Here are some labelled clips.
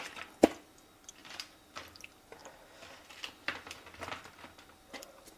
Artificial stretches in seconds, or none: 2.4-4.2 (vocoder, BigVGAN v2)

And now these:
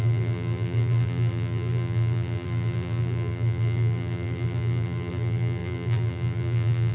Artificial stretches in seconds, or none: 0.0-6.9 (vocoder, BigVGAN v2)

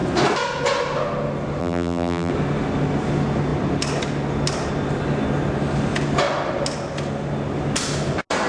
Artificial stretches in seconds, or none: 1.6-2.3 (vocoder, BigVGAN v2)

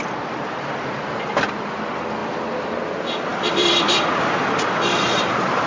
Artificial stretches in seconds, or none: 0.0-1.3 (vocoder, BigVGAN v2); 2.2-2.7; 3.3-5.7

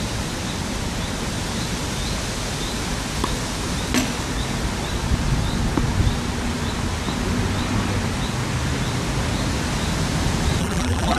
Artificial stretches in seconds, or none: 10.6-11.2 (vocoder, BigVGAN v2)